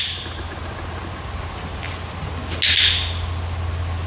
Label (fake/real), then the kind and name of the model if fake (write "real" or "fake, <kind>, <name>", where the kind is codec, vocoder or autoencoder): real